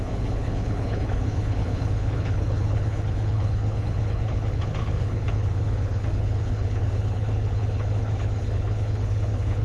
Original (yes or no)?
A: no